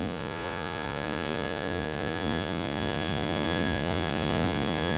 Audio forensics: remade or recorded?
remade